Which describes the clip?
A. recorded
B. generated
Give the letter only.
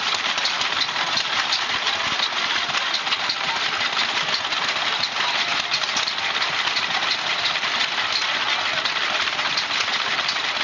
A